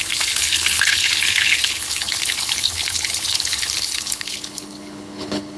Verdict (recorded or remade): remade